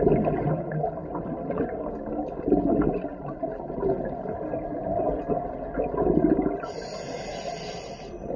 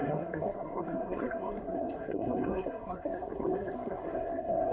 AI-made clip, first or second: second